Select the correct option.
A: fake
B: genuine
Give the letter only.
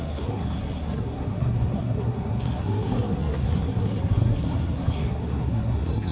A